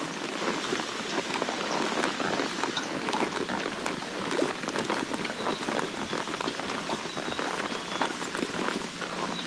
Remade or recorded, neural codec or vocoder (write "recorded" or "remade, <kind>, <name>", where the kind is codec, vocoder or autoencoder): recorded